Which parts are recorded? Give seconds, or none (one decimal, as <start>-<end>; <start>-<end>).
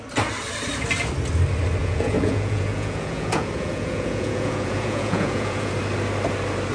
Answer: 0.0-1.8; 5.8-6.7